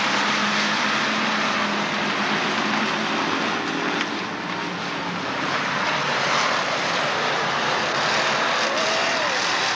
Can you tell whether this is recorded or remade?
recorded